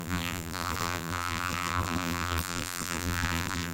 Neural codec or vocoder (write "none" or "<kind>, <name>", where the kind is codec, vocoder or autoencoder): vocoder, BigVGAN v2